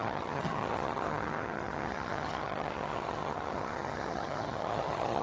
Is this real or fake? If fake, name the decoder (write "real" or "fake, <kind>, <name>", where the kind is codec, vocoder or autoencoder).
fake, vocoder, HiFi-GAN